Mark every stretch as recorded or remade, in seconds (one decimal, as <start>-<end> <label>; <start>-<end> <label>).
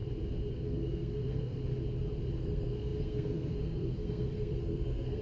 0.0-0.5 recorded; 0.5-1.6 remade; 1.6-2.4 recorded; 2.4-5.2 remade